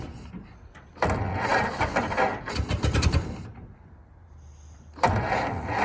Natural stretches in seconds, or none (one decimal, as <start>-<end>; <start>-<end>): 0.0-5.8